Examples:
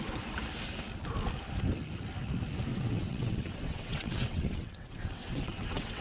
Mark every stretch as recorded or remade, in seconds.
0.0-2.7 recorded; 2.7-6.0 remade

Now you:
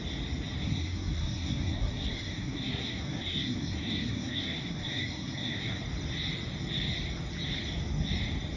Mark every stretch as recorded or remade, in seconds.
0.0-0.6 recorded; 0.6-5.8 remade; 5.8-8.6 recorded

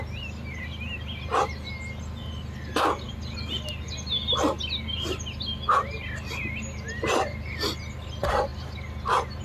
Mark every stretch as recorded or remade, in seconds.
0.0-9.4 recorded

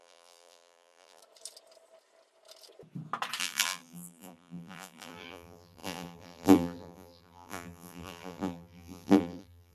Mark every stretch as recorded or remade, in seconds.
0.0-1.2 remade; 1.2-3.4 recorded; 3.4-9.7 remade

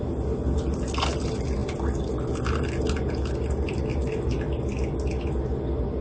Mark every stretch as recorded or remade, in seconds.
0.0-6.0 recorded

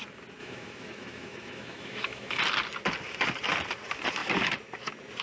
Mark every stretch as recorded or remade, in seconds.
0.0-0.4 recorded; 0.4-2.4 remade; 2.4-5.2 recorded